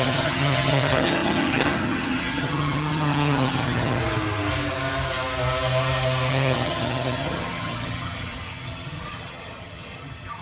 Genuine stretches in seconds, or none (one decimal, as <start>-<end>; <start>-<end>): 4.0-6.3